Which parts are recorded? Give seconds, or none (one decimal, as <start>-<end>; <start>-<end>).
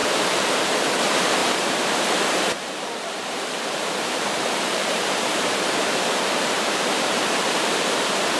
none